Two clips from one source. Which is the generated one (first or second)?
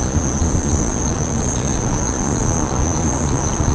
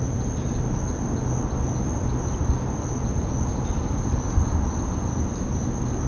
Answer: first